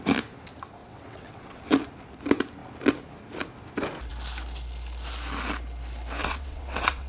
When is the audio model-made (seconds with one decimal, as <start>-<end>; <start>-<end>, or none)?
0.8-1.6; 6.2-7.1